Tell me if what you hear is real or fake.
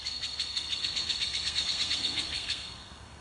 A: fake